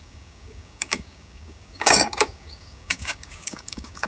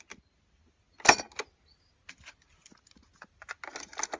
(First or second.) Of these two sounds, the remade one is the first